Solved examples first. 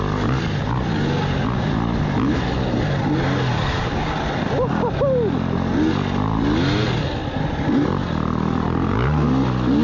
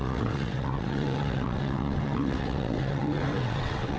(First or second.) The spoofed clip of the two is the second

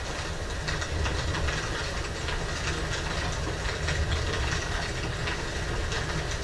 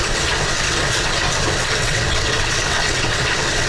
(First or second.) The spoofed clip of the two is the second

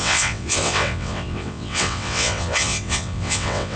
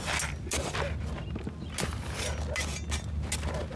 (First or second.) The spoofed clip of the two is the first